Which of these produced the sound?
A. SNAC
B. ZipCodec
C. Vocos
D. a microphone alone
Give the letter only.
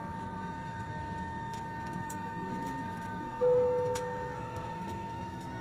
A